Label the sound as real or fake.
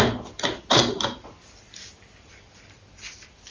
real